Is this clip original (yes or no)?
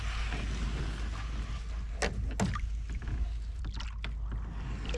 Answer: yes